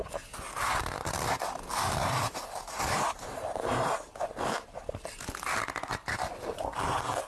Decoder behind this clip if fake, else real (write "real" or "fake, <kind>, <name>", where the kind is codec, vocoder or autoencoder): real